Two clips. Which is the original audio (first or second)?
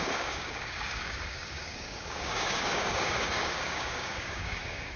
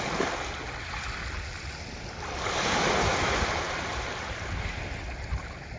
second